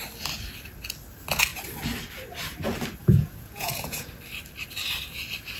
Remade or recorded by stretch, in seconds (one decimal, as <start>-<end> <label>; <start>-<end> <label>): 0.0-3.0 recorded; 3.0-4.1 remade; 4.1-5.6 recorded